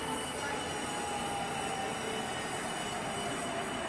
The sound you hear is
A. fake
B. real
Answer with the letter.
B